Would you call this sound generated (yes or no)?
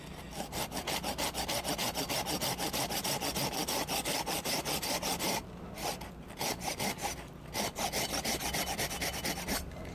no